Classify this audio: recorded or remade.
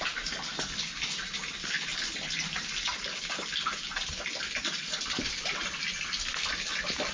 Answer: recorded